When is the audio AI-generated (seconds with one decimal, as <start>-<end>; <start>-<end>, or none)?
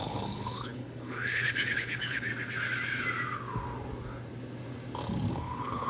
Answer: 0.0-2.3; 5.3-5.9